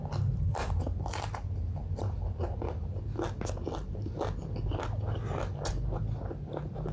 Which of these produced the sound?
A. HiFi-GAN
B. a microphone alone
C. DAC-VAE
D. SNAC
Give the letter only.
B